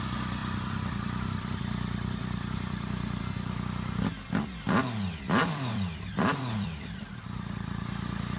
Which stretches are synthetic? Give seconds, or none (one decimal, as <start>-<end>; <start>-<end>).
0.4-3.2; 5.4-7.2